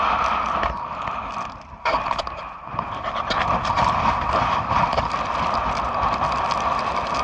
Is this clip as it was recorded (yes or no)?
yes